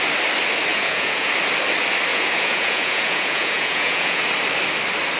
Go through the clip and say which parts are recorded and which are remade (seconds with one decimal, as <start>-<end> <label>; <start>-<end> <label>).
0.0-0.7 recorded; 0.7-1.3 remade; 1.3-2.1 recorded; 2.1-4.2 remade; 4.2-5.2 recorded